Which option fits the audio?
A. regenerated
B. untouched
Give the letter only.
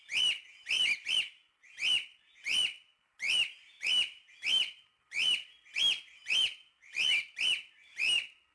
B